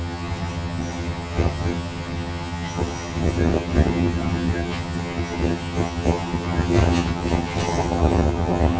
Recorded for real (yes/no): no